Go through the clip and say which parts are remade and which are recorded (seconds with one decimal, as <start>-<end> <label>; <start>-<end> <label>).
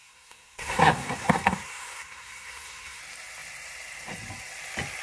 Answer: 0.0-3.0 remade; 3.0-5.0 recorded